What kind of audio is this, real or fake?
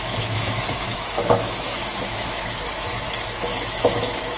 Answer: fake